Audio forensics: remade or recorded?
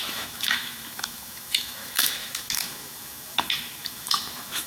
remade